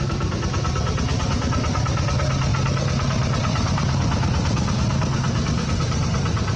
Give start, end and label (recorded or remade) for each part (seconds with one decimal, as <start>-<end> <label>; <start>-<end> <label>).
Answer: 0.0-6.6 recorded